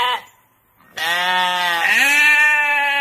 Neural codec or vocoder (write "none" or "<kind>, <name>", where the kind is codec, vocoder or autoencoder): none